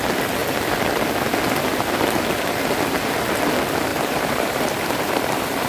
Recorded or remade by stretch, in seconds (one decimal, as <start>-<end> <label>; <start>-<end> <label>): 0.0-3.9 recorded; 3.9-5.7 remade